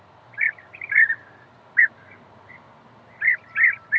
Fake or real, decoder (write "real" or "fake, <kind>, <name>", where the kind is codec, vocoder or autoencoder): real